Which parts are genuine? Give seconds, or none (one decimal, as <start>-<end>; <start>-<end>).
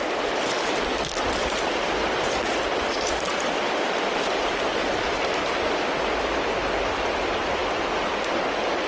0.5-1.4; 2.0-3.3; 5.9-8.9